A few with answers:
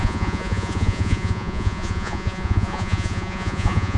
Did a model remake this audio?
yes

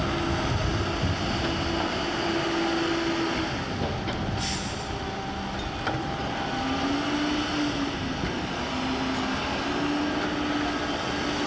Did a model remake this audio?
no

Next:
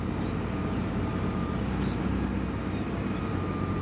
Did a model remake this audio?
yes